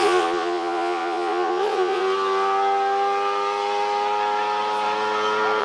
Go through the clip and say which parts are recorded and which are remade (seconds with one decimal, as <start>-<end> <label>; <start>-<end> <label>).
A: 0.0-2.0 remade; 2.0-5.6 recorded